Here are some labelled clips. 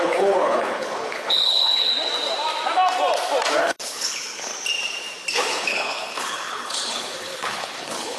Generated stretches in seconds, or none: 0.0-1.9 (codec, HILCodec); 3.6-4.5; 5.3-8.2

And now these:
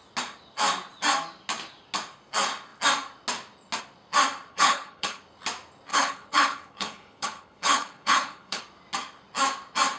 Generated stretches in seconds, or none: 4.5-5.2 (codec, HILCodec); 5.9-8.6

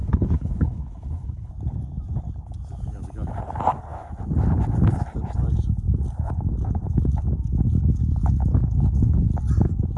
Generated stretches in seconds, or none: 0.0-1.5 (codec, HILCodec)

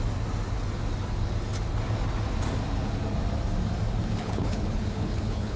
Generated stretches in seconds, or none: 4.2-5.6 (codec, HILCodec)

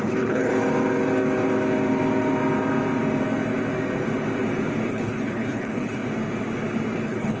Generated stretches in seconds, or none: 0.0-0.5 (codec, HILCodec); 4.9-6.0; 7.0-7.4